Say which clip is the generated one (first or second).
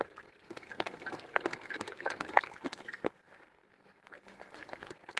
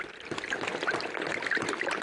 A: first